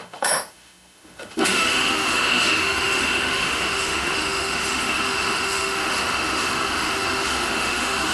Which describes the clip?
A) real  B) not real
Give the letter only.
B